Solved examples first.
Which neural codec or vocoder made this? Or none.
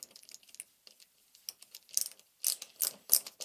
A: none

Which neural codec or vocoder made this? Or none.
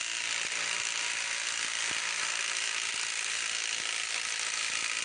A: none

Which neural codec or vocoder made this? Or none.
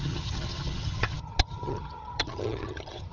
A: vocoder, HiFi-GAN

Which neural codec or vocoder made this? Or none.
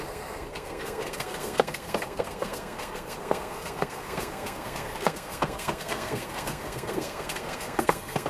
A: codec, SNAC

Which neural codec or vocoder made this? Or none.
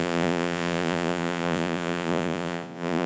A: vocoder, Vocos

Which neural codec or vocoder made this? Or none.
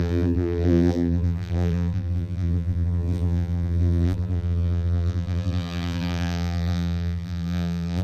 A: vocoder, BigVGAN v2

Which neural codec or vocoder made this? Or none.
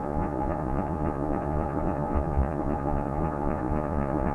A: vocoder, Vocos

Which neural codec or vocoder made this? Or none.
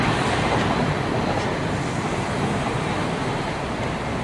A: none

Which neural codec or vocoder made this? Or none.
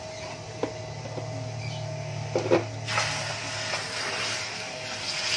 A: none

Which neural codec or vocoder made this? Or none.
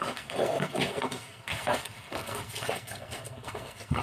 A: codec, SNAC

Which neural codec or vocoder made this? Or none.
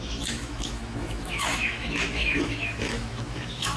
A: autoencoder, DAC-VAE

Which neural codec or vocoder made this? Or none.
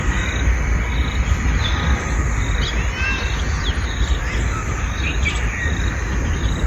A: none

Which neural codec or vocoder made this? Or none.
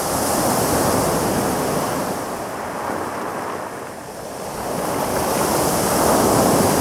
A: none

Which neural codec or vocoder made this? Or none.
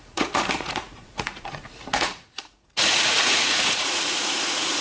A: vocoder, Vocos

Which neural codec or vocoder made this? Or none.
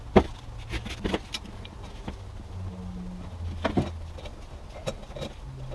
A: none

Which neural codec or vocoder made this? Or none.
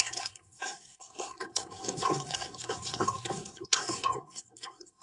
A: codec, SNAC